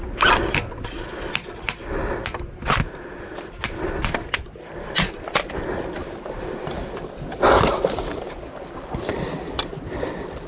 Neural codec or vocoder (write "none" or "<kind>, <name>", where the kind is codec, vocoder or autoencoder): none